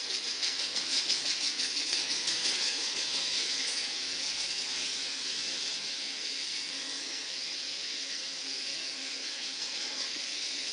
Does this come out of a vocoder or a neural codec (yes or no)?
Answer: yes